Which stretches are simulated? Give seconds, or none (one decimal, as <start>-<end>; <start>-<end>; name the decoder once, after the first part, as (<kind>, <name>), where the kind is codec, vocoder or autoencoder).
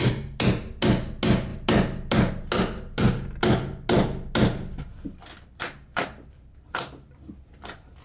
none